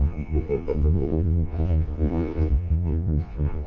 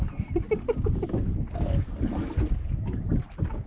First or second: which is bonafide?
second